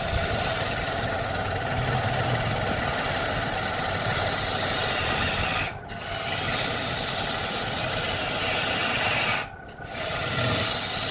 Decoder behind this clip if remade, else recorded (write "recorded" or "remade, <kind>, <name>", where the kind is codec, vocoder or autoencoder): recorded